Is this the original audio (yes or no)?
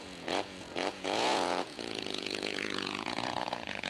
no